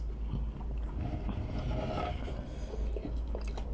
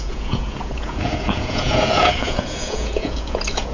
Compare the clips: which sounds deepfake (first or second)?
second